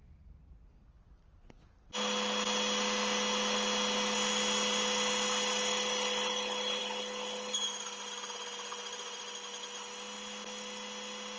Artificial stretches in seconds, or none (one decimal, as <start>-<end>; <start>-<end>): none